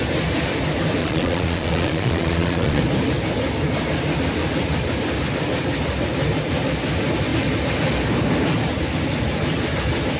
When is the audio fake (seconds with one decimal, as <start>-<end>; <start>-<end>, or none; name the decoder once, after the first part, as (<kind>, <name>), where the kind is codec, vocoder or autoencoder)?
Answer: 1.0-2.8 (vocoder, Vocos)